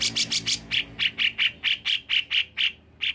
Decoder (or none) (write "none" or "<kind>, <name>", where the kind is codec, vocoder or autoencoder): none